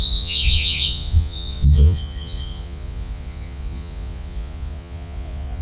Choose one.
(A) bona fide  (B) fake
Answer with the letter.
B